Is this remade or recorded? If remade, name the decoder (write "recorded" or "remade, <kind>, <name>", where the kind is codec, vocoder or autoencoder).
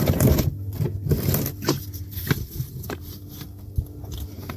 recorded